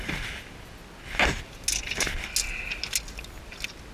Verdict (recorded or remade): recorded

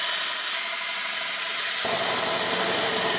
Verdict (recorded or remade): recorded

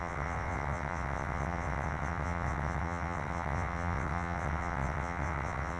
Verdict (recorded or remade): remade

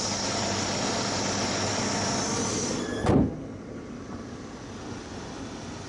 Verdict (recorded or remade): recorded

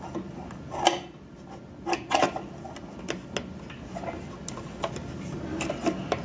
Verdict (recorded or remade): recorded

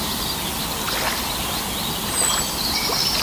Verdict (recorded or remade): remade